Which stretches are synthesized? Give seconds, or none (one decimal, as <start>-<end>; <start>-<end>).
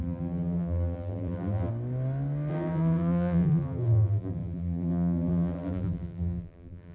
0.0-1.7; 2.5-6.9